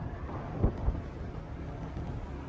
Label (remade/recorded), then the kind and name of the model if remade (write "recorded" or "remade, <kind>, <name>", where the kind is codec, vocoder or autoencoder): recorded